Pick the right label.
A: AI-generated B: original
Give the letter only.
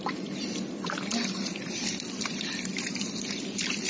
A